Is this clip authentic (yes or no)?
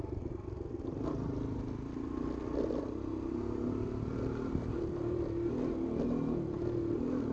yes